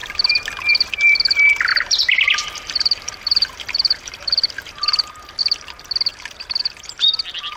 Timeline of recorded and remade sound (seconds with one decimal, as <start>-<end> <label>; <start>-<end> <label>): 0.0-1.7 recorded; 1.7-5.4 remade; 5.4-7.6 recorded